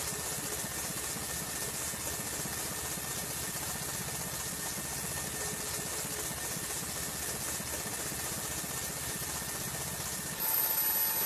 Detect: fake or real real